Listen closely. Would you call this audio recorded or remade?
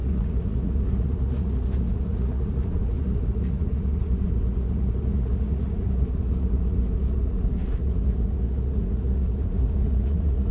remade